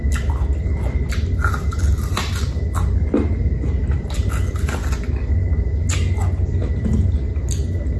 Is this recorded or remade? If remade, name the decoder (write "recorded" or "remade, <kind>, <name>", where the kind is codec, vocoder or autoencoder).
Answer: recorded